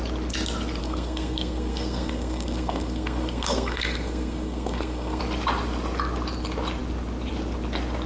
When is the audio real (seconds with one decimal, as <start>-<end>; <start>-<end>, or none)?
0.0-0.8; 5.2-8.1